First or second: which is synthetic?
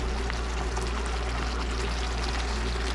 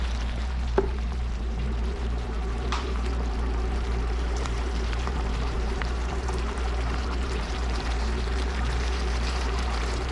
second